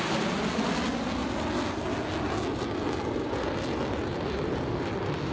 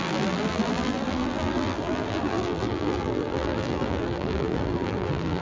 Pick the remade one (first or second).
second